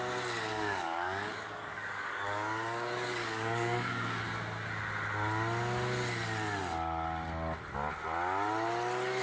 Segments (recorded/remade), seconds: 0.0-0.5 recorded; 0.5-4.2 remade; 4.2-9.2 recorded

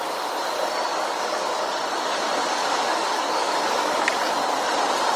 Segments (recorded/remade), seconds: 0.0-0.9 recorded; 0.9-1.7 remade; 1.7-2.4 recorded; 2.4-4.3 remade; 4.3-5.2 recorded

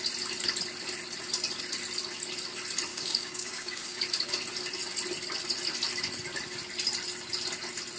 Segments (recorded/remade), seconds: 0.0-2.9 recorded; 2.9-4.0 remade; 4.0-8.0 recorded

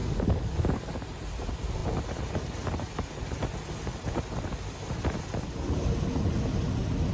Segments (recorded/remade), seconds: 0.0-0.8 remade; 0.8-7.1 recorded

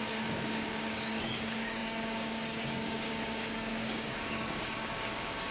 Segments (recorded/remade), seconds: 0.0-5.5 remade

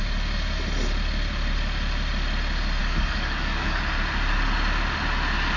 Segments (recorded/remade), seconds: 0.0-2.8 recorded; 2.8-3.8 remade; 3.8-5.6 recorded

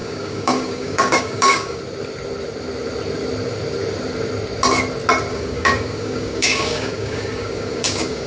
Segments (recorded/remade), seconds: 0.0-1.8 remade; 1.8-5.3 recorded; 5.3-8.3 remade